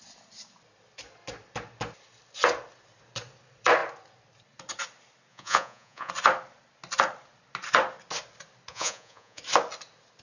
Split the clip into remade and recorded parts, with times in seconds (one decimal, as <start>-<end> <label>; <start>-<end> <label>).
0.0-5.3 recorded; 5.3-6.1 remade; 6.1-8.7 recorded; 8.7-9.4 remade; 9.4-10.2 recorded